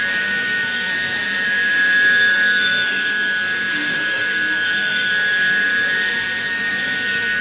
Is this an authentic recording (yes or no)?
no